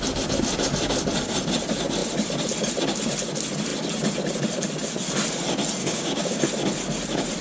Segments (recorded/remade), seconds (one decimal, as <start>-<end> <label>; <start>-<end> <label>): 0.0-5.8 recorded; 5.8-6.4 remade; 6.4-7.4 recorded

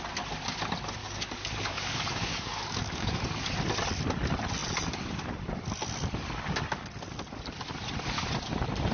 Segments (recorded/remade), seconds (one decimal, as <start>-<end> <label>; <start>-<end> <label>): 0.0-1.0 recorded; 1.0-3.2 remade; 3.2-8.9 recorded

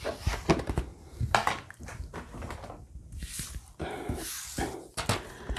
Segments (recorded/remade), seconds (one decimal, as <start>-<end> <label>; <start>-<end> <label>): 0.0-5.6 recorded